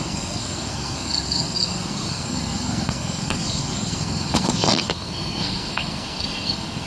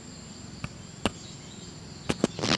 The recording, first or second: second